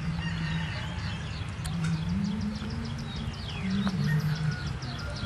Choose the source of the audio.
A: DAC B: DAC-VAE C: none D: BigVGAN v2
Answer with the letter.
C